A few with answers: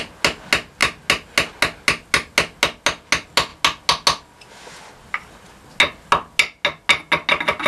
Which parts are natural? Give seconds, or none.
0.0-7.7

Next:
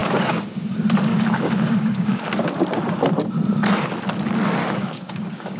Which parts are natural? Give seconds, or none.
0.7-1.1; 2.3-4.6

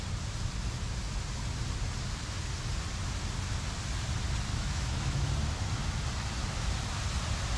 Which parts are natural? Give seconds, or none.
0.0-4.5; 5.3-7.6

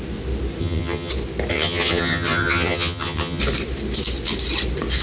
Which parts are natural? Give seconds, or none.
0.0-0.6; 1.1-1.5; 3.4-5.0